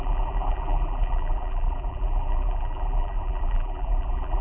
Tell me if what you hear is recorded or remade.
remade